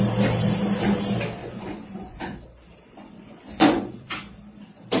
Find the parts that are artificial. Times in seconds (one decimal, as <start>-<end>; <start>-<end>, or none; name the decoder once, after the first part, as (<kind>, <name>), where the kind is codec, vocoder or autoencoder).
1.4-2.4 (vocoder, Vocos); 2.9-4.1